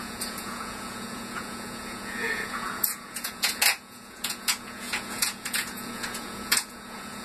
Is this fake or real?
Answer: fake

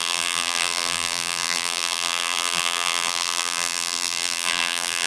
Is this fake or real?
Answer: fake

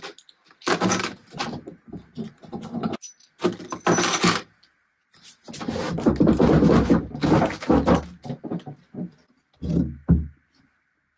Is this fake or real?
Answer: real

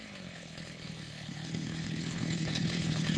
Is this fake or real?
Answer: fake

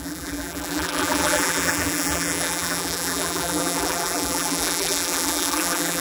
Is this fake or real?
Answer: fake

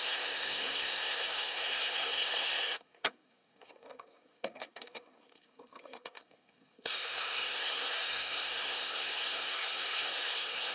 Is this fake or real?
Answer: fake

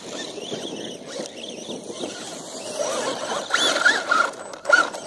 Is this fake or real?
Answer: real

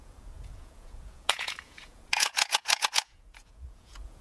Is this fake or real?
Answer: fake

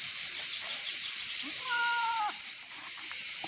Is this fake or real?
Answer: fake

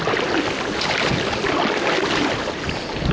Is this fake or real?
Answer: real